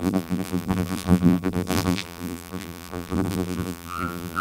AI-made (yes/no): yes